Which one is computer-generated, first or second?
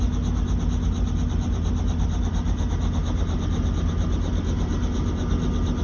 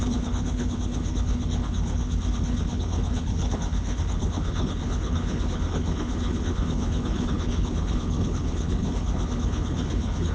second